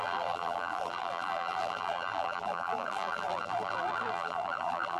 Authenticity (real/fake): fake